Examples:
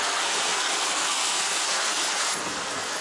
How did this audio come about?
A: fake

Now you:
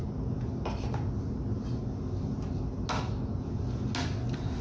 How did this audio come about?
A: real